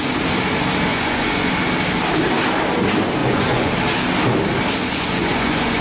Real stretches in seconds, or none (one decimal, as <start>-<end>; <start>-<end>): 0.0-0.9; 1.5-3.2; 3.7-4.9